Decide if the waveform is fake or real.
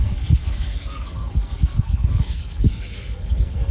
fake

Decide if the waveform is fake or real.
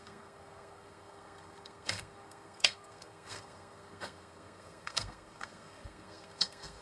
fake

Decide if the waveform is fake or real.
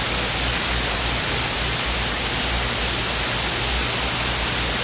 real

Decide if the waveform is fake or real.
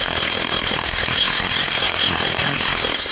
fake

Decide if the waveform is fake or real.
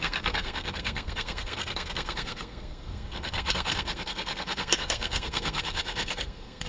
fake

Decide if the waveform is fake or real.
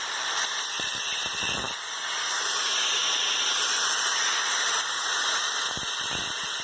real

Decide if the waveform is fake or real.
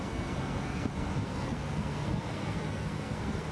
fake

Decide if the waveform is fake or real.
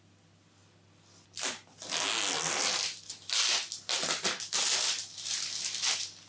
real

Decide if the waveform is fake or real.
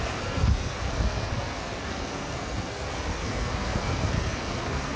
fake